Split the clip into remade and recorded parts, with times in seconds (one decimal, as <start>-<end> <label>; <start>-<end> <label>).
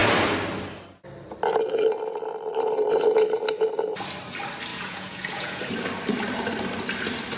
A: 0.0-4.7 recorded; 4.7-5.6 remade; 5.6-7.4 recorded